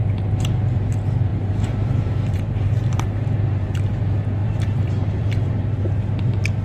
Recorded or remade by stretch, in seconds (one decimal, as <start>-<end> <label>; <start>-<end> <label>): 0.0-1.3 recorded; 1.3-3.9 remade; 3.9-4.4 recorded; 4.4-5.6 remade; 5.6-6.6 recorded